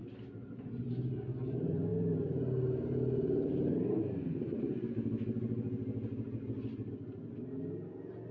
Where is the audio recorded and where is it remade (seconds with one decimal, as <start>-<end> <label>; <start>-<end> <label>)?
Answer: 0.0-8.3 recorded